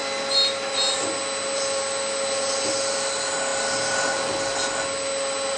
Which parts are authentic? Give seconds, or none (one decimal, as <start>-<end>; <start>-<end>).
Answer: 0.0-5.6